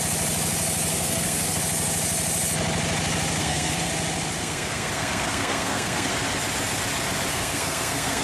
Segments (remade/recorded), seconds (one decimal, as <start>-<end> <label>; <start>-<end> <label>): 0.0-0.9 recorded; 0.9-1.6 remade; 1.6-3.4 recorded; 3.4-3.9 remade; 3.9-4.4 recorded; 4.4-6.1 remade; 6.1-7.3 recorded; 7.3-8.2 remade